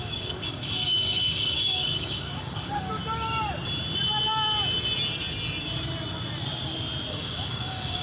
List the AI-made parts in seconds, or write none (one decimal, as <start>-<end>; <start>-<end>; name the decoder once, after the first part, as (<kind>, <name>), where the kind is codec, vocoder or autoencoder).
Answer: 0.0-3.0 (codec, DAC); 7.1-8.0